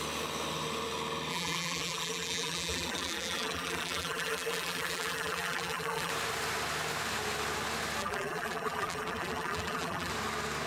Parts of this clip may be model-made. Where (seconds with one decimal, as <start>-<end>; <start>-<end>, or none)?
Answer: 1.3-6.1; 8.0-10.1